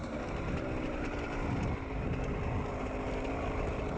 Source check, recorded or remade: recorded